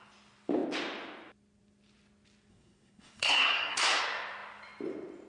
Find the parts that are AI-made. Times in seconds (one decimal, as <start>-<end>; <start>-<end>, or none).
2.5-4.0